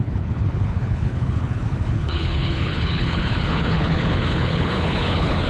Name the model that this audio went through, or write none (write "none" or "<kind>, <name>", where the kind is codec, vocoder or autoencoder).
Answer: codec, HILCodec